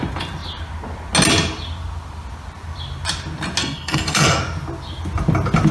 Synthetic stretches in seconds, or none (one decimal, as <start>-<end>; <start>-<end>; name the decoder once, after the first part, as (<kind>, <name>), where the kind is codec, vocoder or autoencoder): 3.6-4.4 (codec, SNAC)